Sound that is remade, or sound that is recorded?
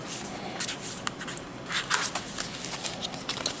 recorded